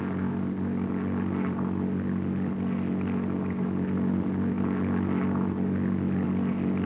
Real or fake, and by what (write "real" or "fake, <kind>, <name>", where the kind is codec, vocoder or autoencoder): real